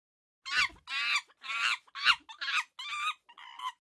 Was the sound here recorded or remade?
recorded